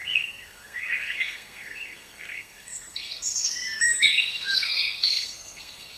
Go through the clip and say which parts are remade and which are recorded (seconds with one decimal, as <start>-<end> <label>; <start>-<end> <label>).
0.0-6.0 remade